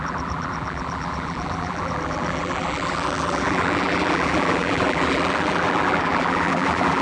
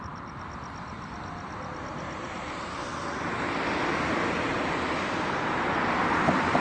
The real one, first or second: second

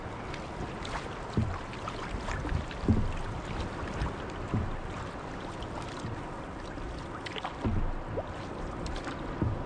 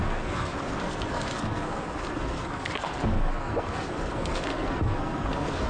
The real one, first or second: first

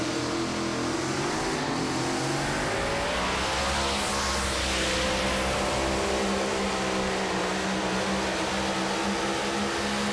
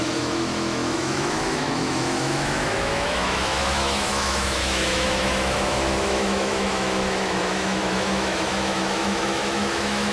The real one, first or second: first